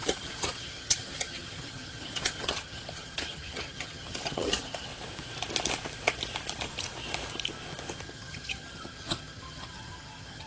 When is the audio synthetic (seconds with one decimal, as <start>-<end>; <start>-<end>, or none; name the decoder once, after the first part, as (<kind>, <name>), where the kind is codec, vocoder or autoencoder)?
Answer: 0.0-4.9 (vocoder, HiFi-GAN); 8.0-10.5